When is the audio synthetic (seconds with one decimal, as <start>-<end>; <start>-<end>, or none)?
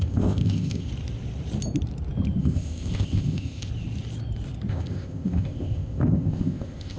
0.0-0.9; 2.4-3.7; 4.7-7.0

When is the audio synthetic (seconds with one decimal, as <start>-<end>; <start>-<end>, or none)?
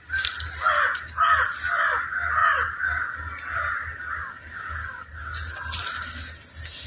none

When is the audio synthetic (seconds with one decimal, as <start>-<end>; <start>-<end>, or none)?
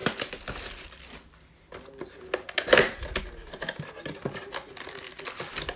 none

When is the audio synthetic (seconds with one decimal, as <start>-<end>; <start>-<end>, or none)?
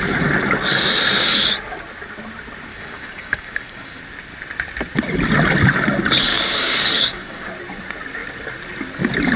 2.7-4.0; 6.3-7.5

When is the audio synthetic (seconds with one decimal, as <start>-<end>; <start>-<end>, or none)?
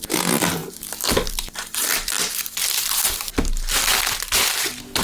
none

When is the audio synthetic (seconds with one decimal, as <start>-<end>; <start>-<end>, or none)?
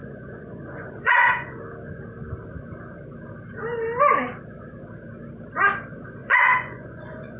0.0-1.6; 6.2-7.4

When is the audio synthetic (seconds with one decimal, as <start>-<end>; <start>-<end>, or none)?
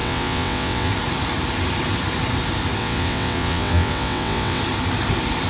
0.0-0.9; 2.8-4.6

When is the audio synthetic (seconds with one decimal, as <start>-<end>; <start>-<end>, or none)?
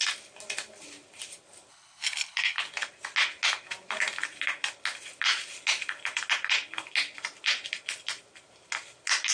1.7-2.6